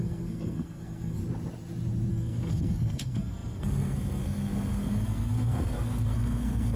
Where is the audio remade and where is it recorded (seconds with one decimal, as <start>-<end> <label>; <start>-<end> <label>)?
0.0-1.2 remade; 1.2-2.1 recorded; 2.1-6.8 remade